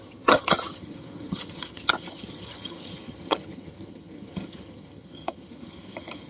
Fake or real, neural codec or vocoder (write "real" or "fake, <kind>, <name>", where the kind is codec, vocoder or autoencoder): fake, vocoder, HiFi-GAN